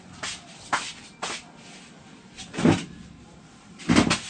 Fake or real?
real